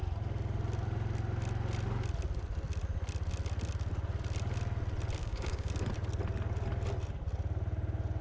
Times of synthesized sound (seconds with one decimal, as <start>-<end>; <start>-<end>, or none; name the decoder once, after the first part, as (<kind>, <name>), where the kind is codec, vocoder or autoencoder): 5.2-5.7 (codec, DAC)